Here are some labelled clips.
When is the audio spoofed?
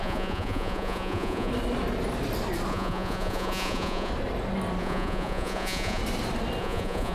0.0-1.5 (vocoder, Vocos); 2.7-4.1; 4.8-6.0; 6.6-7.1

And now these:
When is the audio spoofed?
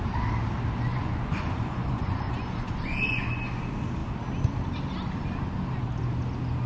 0.9-3.6 (vocoder, Vocos)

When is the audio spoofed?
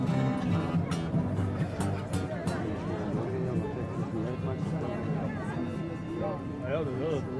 none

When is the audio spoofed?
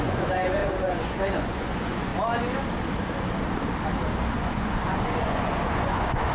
0.0-2.1 (vocoder, Vocos); 4.3-6.3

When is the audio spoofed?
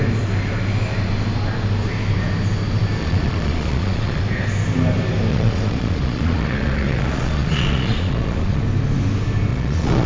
3.0-4.2 (vocoder, Vocos); 5.3-8.6; 9.5-10.1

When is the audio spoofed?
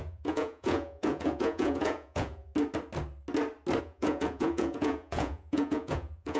0.0-2.5 (vocoder, Vocos); 3.8-6.4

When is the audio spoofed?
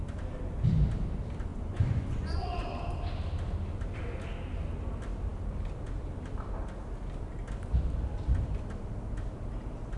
1.5-2.6 (vocoder, Vocos)